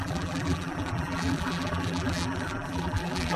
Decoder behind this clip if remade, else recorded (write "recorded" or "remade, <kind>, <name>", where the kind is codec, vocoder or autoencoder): remade, vocoder, BigVGAN v2